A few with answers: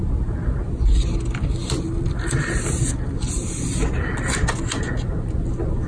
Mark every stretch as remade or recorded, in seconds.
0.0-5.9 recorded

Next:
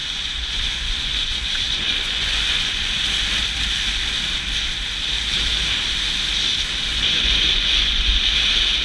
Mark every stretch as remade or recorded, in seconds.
0.0-3.0 remade; 3.0-6.9 recorded; 6.9-8.3 remade; 8.3-8.8 recorded